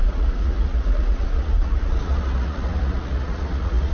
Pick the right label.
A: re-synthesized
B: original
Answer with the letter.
A